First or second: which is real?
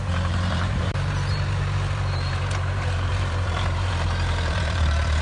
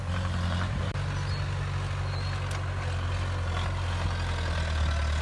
second